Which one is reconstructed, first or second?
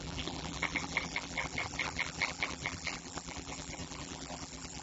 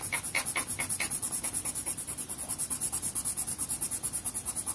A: first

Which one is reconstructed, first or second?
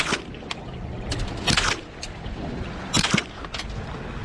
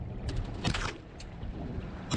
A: second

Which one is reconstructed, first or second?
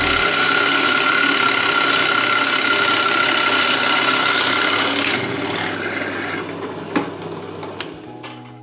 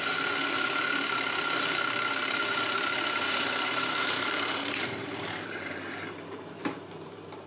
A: second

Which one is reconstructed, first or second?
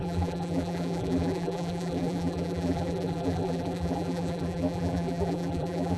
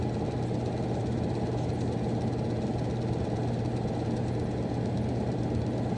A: first